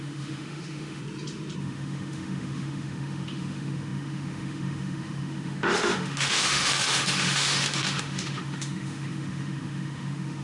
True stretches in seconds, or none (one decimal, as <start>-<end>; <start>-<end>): 1.0-1.6